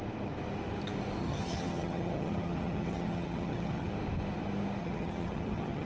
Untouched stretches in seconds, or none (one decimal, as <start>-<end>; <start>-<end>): 0.0-1.2; 3.9-4.8